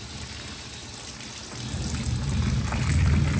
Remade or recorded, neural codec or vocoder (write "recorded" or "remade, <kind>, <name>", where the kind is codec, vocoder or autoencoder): recorded